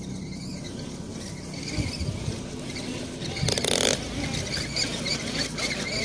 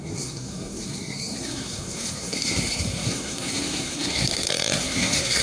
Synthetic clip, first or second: second